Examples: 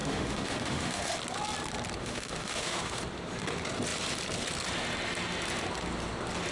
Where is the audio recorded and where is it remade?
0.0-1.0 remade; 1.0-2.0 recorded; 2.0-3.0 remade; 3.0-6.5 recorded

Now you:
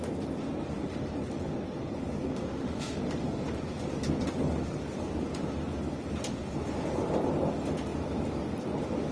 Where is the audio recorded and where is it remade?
0.0-2.3 recorded; 2.3-3.0 remade; 3.0-9.1 recorded

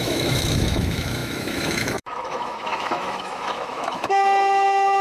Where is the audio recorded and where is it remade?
0.0-5.0 remade